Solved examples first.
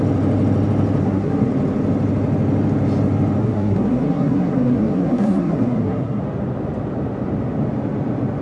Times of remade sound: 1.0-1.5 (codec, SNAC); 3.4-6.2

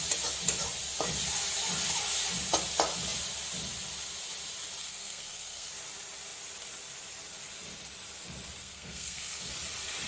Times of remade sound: 4.8-5.7 (codec, SNAC); 8.6-9.5

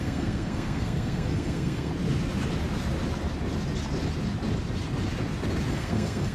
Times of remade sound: 0.0-1.9 (codec, SNAC); 5.7-6.3